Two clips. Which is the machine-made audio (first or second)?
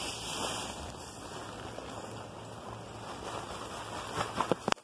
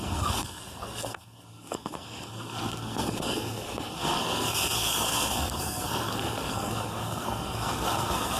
second